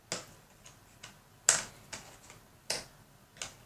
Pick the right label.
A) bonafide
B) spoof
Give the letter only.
A